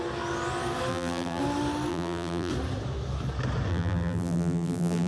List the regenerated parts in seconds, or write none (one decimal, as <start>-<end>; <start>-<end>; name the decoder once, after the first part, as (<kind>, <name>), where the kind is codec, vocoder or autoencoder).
0.9-1.4 (vocoder, BigVGAN v2); 1.9-2.5; 3.7-5.1